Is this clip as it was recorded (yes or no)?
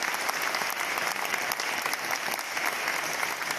yes